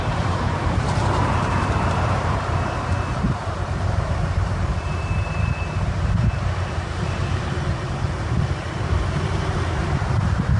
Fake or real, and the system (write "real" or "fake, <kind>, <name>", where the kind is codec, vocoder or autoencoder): fake, vocoder, BigVGAN v2